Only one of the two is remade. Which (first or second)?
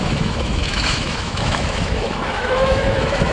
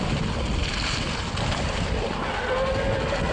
first